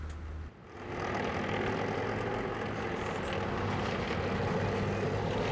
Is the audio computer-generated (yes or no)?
no